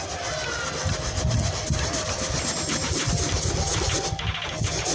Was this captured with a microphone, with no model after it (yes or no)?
yes